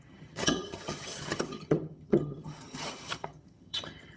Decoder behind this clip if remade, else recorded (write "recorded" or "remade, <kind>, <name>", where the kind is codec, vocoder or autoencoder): remade, vocoder, HiFi-GAN